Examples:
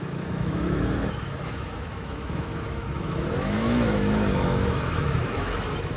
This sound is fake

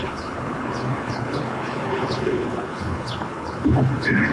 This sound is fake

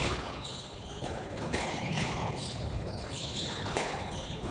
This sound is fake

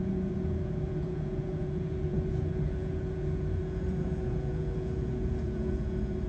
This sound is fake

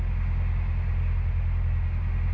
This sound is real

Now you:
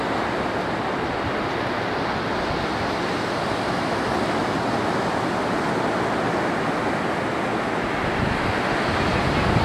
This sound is real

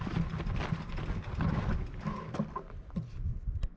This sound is real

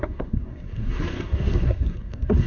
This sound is fake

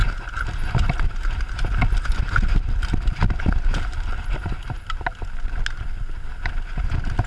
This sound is real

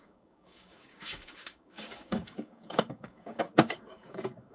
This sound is fake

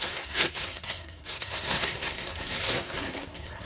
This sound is fake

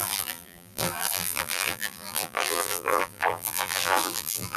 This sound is fake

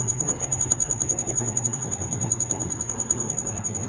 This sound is fake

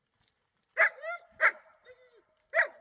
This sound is real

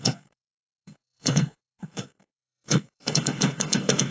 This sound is fake